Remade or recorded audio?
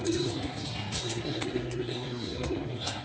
remade